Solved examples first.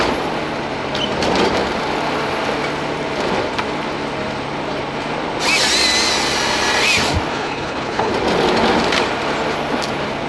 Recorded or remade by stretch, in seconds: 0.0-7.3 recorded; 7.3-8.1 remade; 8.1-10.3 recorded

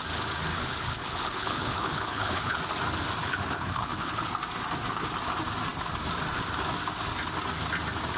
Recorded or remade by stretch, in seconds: 0.0-0.5 recorded; 0.5-2.6 remade; 2.6-3.2 recorded; 3.2-4.3 remade; 4.3-8.2 recorded

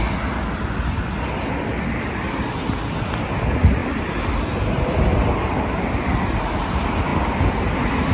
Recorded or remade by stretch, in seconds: 0.0-8.1 recorded

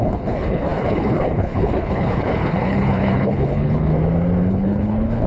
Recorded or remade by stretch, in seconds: 0.0-3.9 remade; 3.9-4.5 recorded; 4.5-5.3 remade

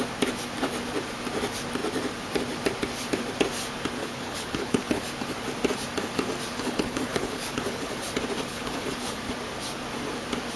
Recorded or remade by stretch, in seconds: 0.0-4.0 recorded; 4.0-5.0 remade; 5.0-6.5 recorded; 6.5-8.1 remade; 8.1-8.5 recorded; 8.5-9.2 remade; 9.2-10.6 recorded

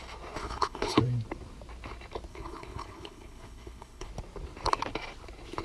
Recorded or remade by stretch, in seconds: 0.0-0.4 recorded; 0.4-1.0 remade; 1.0-2.3 recorded; 2.3-4.1 remade; 4.1-5.6 recorded

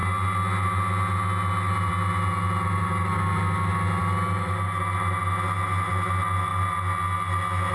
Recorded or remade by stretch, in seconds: 0.0-7.7 recorded